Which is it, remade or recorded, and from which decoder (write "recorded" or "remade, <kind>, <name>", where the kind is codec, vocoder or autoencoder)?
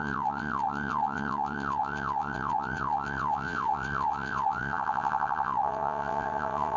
remade, vocoder, WaveNeXt